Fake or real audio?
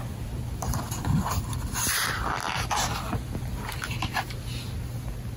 real